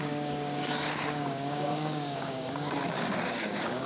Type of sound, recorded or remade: remade